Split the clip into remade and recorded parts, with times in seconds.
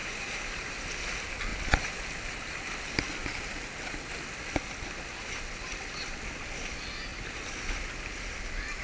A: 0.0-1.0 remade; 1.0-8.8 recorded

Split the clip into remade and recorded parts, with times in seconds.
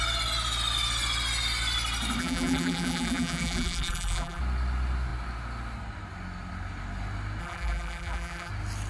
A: 0.0-2.2 recorded; 2.2-4.4 remade; 4.4-7.4 recorded; 7.4-8.5 remade; 8.5-8.9 recorded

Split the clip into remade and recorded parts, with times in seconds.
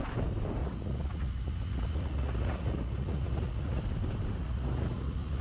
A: 0.0-0.6 recorded; 0.6-3.8 remade; 3.8-4.4 recorded; 4.4-5.4 remade